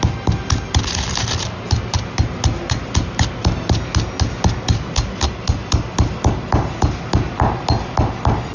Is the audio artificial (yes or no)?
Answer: no